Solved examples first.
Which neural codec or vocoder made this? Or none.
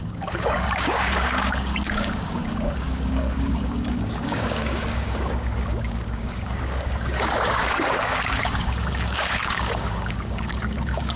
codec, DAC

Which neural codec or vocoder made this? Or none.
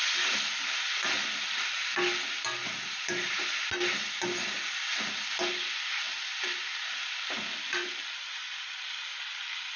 none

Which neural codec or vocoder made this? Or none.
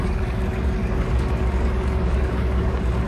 codec, DAC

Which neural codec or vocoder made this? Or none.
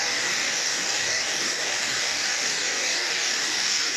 codec, DAC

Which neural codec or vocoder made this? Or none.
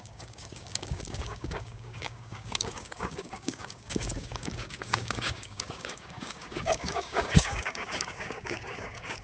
codec, DAC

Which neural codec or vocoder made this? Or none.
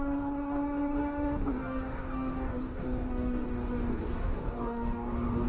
codec, DAC